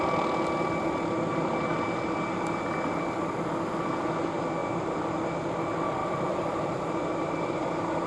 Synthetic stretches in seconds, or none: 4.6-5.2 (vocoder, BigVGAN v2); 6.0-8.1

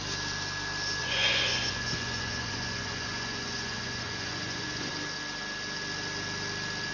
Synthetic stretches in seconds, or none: 1.0-4.9 (vocoder, Vocos)

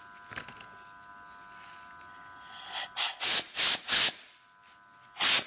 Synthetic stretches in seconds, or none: none